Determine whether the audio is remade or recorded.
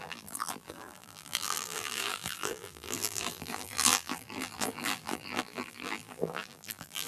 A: remade